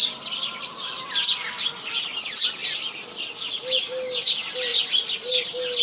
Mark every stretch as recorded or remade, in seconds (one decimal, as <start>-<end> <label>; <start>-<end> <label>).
0.0-5.8 recorded